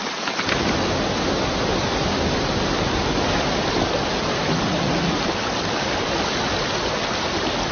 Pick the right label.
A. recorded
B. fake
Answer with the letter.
A